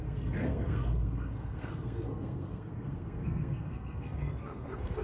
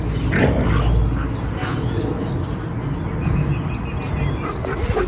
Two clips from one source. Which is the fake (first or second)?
first